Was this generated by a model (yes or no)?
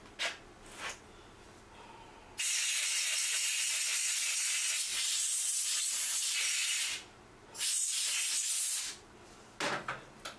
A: no